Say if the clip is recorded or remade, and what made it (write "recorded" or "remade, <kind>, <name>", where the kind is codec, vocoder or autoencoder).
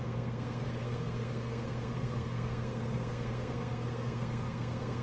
remade, codec, SNAC